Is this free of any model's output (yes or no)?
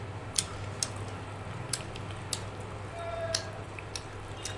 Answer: yes